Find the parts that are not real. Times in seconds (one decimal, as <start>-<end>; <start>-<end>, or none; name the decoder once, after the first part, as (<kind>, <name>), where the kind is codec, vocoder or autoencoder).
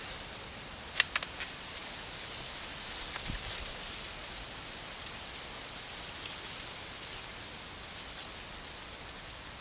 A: 0.0-1.8 (vocoder, BigVGAN v2); 4.2-9.6